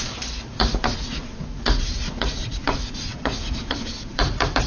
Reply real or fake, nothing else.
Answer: fake